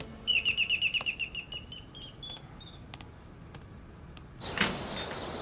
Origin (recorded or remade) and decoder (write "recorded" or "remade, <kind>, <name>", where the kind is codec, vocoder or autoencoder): recorded